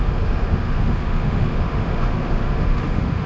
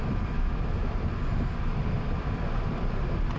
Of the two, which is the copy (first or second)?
first